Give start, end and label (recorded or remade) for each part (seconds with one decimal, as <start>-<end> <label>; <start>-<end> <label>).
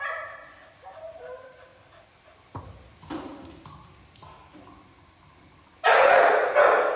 0.0-7.0 recorded